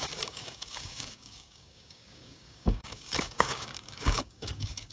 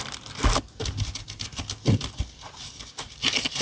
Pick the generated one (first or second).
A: first